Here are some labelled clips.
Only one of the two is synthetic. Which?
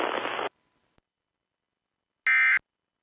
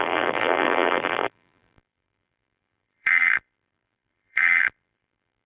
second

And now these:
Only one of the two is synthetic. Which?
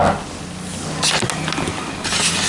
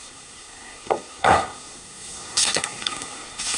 second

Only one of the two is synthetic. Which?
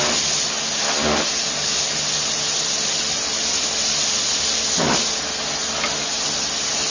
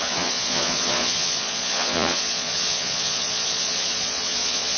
second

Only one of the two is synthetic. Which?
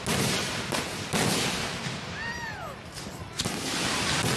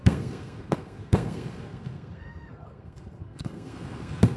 second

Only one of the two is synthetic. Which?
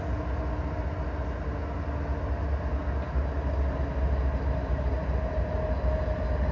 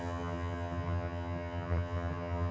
second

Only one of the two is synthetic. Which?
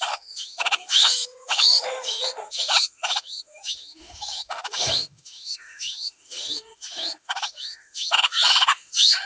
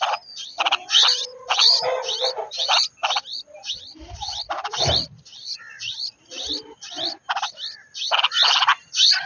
first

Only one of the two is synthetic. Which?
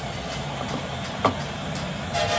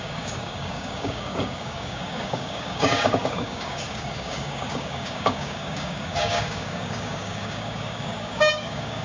second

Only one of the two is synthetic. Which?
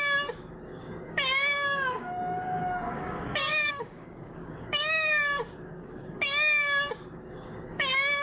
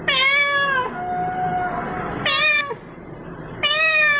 first